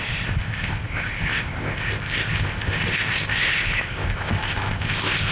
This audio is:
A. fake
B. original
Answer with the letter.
A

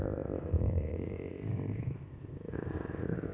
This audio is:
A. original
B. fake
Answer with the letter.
B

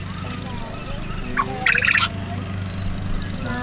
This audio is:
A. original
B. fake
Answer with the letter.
A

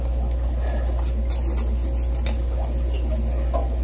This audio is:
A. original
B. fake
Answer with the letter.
A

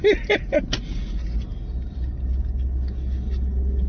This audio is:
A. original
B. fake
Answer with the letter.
A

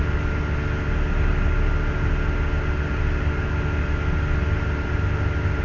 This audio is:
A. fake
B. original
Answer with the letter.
B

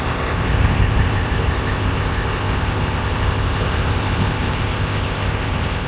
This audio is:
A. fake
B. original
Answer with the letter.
A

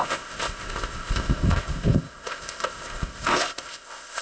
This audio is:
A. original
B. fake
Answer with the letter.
B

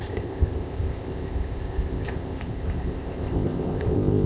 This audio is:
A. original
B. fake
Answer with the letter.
B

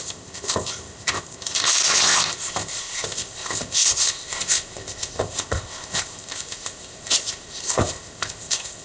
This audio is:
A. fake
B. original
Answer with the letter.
A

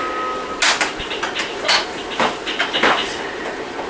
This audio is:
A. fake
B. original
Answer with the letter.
B